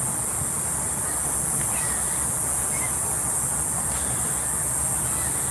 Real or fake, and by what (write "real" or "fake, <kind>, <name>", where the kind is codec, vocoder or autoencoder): real